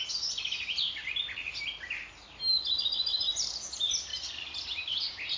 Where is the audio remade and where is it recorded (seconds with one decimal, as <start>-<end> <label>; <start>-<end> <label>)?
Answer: 0.0-5.4 recorded